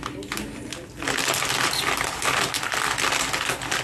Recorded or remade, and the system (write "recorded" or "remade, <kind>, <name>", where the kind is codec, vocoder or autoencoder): recorded